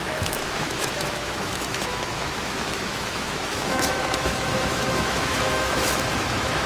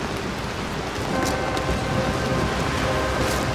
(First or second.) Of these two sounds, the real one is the second